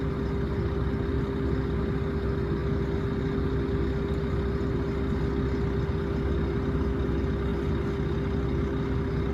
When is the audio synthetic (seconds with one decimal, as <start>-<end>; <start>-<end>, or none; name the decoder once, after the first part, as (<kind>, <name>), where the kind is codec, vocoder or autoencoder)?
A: none